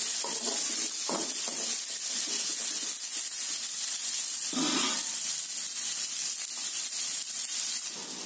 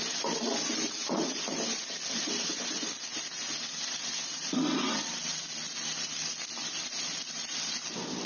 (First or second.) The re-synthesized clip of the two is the second